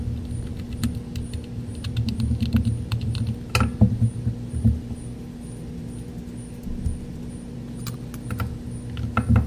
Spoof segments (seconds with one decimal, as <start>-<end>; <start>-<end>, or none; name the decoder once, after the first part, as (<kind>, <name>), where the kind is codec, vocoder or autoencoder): none